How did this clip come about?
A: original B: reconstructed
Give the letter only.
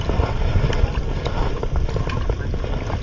A